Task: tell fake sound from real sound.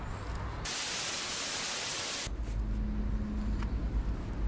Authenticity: real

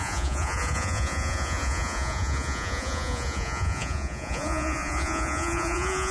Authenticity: fake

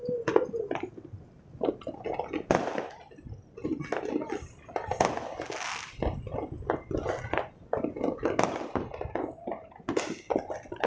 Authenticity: real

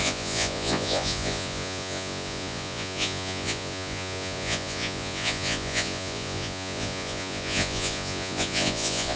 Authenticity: fake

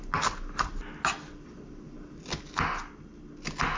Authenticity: real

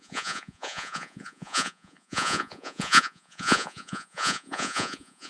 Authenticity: fake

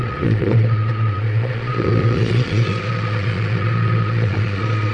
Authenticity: fake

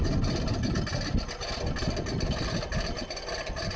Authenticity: real